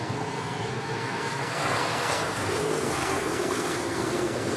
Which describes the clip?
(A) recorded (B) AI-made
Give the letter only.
B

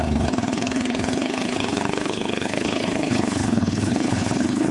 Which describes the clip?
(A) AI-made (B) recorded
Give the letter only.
A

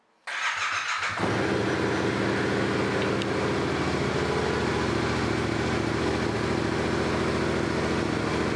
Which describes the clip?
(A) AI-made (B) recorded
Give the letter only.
B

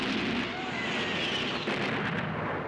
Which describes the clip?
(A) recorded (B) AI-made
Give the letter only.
A